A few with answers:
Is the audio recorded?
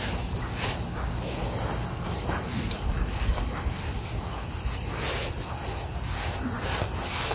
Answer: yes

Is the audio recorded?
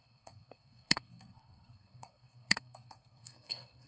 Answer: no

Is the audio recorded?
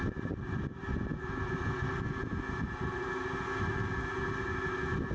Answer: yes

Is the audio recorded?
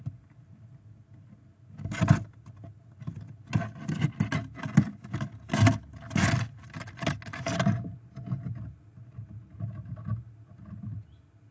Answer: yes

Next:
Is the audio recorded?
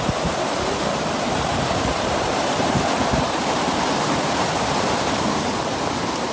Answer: no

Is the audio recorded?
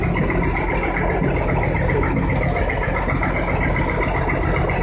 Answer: yes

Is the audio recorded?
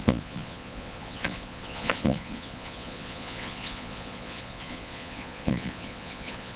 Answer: no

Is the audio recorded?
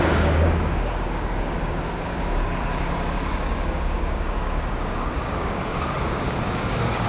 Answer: no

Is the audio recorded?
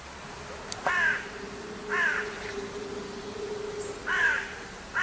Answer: yes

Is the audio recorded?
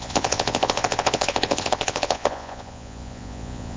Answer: no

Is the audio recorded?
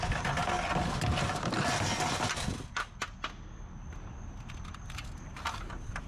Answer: yes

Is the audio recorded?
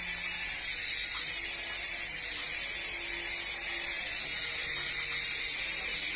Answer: yes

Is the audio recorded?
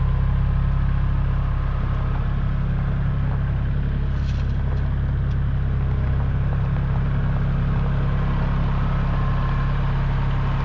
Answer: yes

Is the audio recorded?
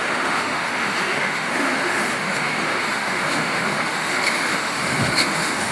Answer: no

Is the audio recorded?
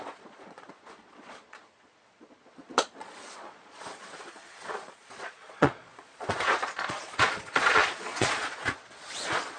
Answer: no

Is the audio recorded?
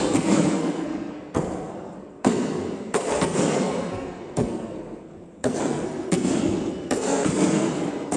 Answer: no